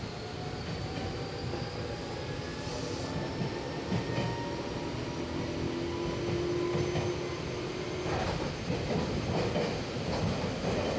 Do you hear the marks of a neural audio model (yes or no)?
no